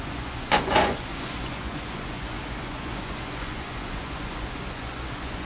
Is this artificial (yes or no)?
yes